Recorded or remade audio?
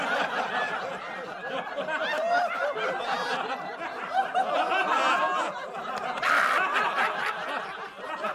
recorded